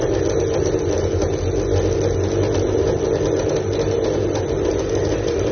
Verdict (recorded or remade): recorded